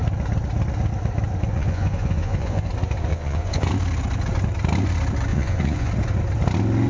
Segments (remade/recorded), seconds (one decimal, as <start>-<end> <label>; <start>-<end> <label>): 0.0-1.5 recorded; 1.5-2.7 remade; 2.7-3.1 recorded; 3.1-3.7 remade; 3.7-5.3 recorded; 5.3-5.9 remade; 5.9-6.9 recorded